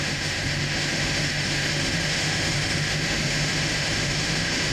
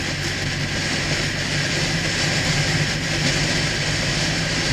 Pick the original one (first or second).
second